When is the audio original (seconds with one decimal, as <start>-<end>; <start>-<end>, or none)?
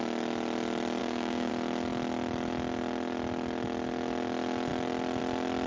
0.0-1.0; 1.5-5.7